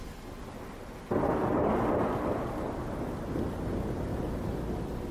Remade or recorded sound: recorded